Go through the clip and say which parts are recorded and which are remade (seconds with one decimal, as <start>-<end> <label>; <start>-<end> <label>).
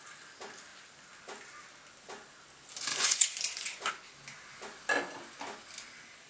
0.0-2.9 recorded; 2.9-3.9 remade; 3.9-6.3 recorded